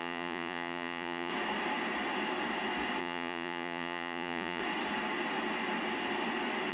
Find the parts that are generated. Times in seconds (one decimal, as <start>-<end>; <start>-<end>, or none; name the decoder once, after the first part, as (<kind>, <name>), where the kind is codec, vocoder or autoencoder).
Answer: 0.0-1.3 (vocoder, Vocos); 3.0-4.6